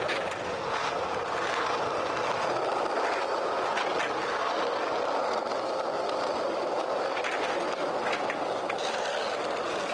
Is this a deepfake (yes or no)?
no